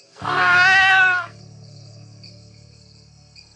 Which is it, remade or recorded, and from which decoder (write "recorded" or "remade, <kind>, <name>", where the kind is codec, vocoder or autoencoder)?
remade, codec, SNAC